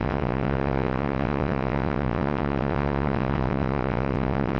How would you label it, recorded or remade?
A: remade